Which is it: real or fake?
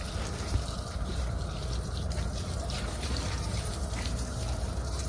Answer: fake